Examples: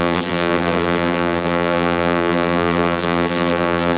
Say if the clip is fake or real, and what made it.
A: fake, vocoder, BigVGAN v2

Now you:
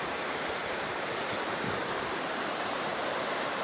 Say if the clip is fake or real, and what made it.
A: fake, vocoder, BigVGAN v2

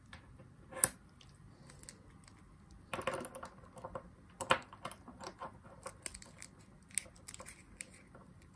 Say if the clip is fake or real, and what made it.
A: real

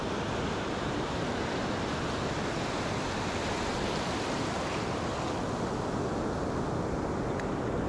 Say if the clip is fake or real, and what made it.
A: real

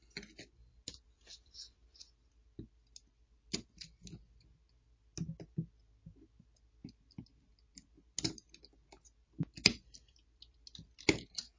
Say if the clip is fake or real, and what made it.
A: real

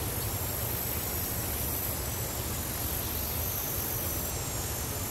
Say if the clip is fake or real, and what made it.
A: real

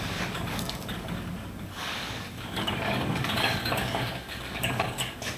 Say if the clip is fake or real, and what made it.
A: fake, codec, DAC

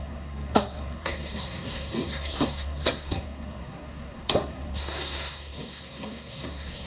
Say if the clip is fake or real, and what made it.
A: fake, codec, SNAC